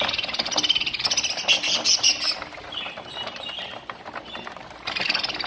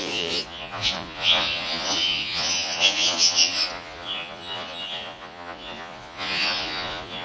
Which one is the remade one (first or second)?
second